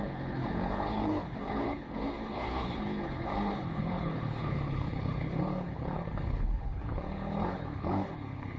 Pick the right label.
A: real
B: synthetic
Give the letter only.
B